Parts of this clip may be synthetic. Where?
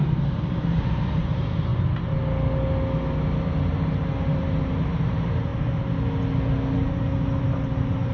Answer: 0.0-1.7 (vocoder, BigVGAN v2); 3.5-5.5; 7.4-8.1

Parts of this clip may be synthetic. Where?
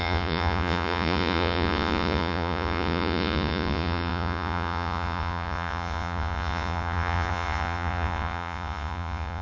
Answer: 0.0-9.4 (vocoder, Vocos)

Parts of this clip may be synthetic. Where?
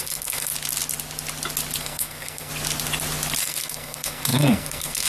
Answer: 0.0-0.5 (codec, SNAC); 1.8-2.5; 3.4-5.1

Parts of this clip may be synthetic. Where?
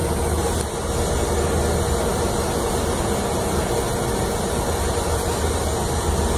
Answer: none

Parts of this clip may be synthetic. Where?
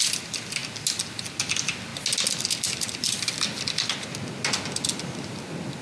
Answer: none